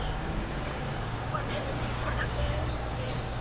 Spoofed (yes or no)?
yes